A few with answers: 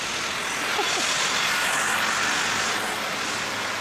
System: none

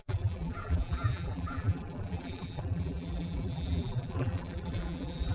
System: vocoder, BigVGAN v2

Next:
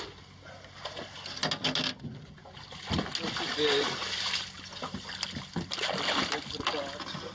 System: none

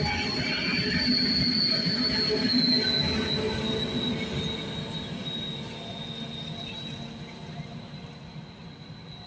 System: none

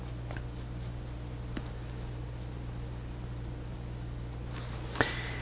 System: none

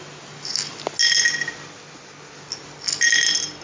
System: none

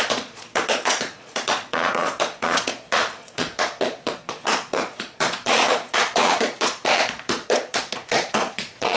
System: vocoder, Vocos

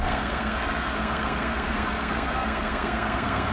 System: codec, SNAC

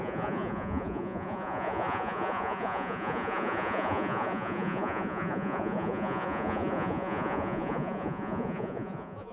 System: vocoder, Vocos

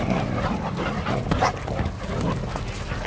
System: none